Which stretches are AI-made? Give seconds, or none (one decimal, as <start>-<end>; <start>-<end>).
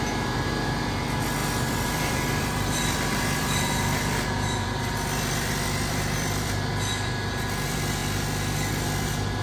1.4-6.5